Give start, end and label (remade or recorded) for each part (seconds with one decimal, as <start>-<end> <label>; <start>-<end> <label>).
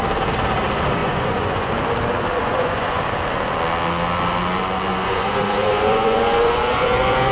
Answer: 0.0-1.0 recorded; 1.0-1.7 remade; 1.7-2.4 recorded; 2.4-3.0 remade; 3.0-4.9 recorded; 4.9-7.3 remade